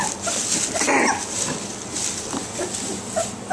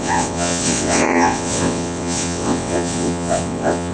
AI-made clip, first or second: second